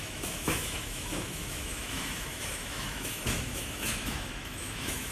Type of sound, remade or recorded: remade